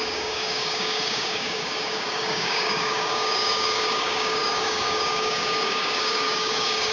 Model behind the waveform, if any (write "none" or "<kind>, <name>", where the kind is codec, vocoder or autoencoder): codec, DAC